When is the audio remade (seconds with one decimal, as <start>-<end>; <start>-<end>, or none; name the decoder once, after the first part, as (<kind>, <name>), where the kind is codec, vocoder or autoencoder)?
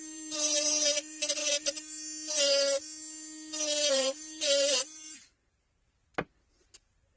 0.0-1.4 (vocoder, BigVGAN v2); 3.9-6.1; 6.6-7.2